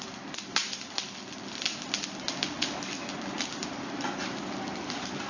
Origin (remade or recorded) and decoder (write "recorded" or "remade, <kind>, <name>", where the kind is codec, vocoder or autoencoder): recorded